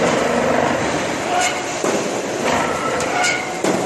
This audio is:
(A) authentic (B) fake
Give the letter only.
B